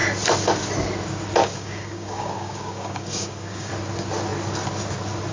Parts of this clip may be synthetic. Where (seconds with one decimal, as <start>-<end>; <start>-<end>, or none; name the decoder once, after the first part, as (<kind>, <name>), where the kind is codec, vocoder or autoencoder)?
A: 1.4-3.7 (codec, DAC)